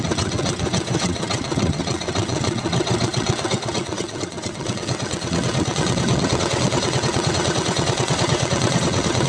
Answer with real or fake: fake